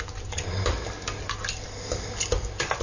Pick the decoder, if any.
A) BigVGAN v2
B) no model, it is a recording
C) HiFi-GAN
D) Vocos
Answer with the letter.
B